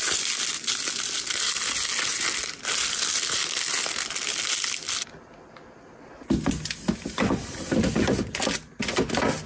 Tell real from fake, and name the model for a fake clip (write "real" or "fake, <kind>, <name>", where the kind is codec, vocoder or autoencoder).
real